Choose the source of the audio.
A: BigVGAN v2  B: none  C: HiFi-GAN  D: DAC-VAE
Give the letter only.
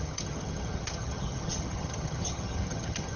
C